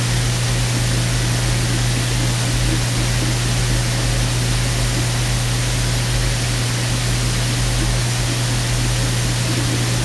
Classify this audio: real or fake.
real